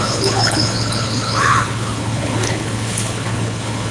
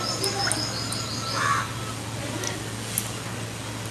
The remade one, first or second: first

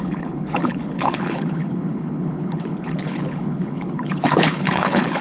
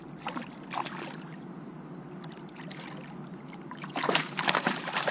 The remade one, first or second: first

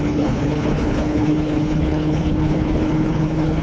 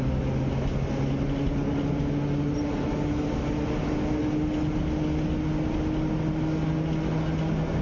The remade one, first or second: first